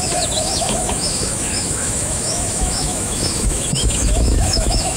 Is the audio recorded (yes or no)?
no